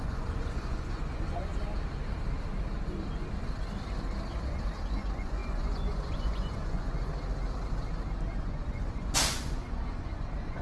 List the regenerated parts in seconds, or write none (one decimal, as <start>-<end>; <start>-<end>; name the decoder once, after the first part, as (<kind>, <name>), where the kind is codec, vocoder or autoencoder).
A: 0.0-1.5 (vocoder, Vocos); 4.8-7.1; 8.4-10.6